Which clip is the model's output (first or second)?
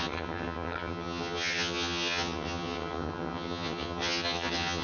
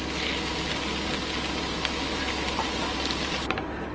first